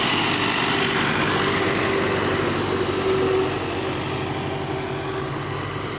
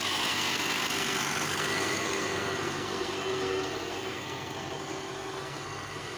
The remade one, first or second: second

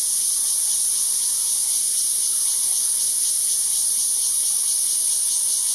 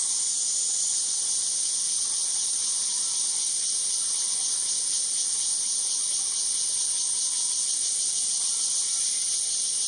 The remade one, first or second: first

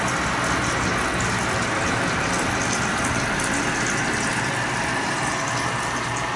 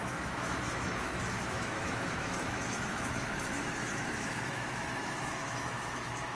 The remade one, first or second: second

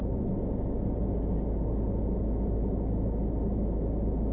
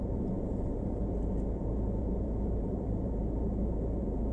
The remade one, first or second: second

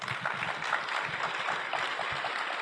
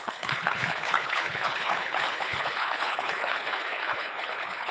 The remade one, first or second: second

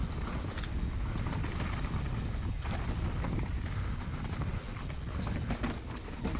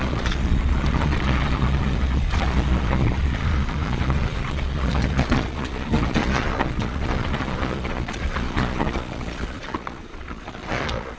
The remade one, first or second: second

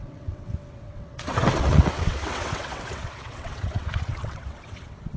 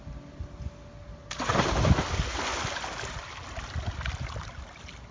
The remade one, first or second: first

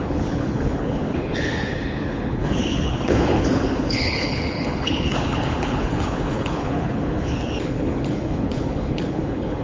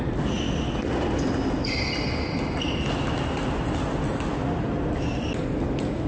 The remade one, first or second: first